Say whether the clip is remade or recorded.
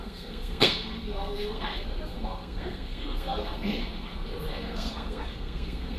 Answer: remade